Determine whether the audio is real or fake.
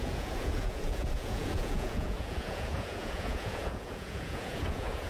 fake